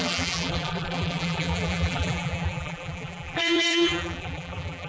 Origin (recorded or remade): remade